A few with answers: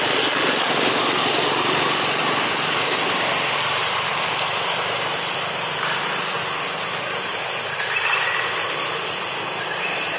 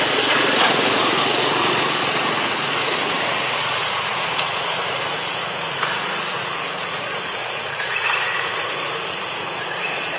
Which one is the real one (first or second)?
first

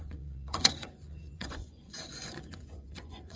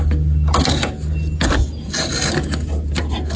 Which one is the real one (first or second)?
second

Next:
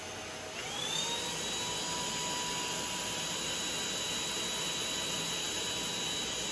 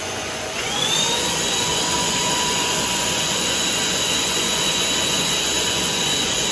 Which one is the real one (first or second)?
first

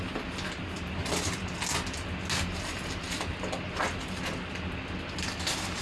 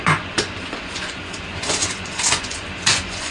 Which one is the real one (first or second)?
first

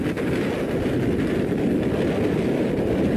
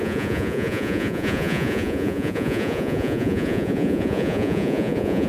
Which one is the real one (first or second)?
first